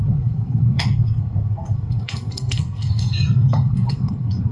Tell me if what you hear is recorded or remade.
remade